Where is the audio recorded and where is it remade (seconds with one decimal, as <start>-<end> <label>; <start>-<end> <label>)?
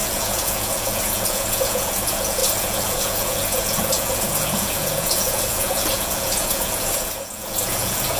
0.0-8.2 remade